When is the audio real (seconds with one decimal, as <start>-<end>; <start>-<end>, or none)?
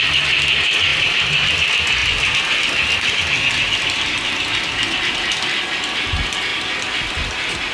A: 0.0-7.7